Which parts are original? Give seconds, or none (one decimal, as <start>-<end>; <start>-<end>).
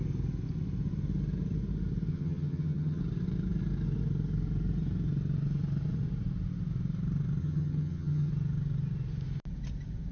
0.0-2.1; 3.0-7.4; 8.3-10.1